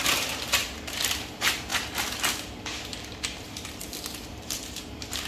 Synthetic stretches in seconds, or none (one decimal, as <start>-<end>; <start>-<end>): 0.0-1.7; 3.4-3.8; 4.3-5.3